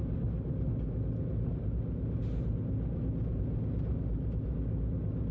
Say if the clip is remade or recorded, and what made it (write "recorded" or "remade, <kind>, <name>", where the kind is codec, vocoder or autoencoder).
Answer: recorded